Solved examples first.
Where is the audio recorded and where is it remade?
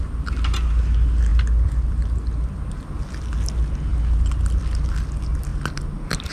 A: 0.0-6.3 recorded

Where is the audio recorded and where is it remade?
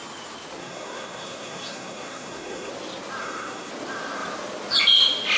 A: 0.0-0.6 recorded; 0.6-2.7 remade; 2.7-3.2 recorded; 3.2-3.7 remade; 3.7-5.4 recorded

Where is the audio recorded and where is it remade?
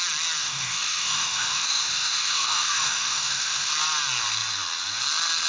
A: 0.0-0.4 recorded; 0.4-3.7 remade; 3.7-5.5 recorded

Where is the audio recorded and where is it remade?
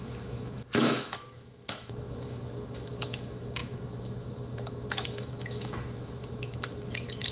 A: 0.0-7.3 remade